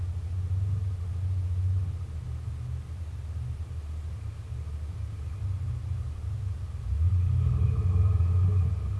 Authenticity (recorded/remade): recorded